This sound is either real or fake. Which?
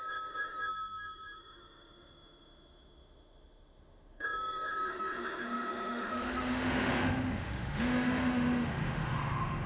fake